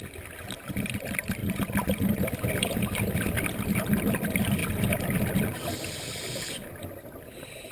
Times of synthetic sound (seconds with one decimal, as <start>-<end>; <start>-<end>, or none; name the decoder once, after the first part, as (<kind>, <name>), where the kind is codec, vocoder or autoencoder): none